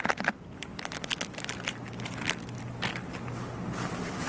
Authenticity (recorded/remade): recorded